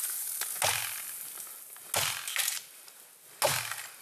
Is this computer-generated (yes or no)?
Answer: no